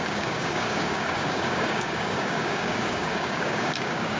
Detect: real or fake fake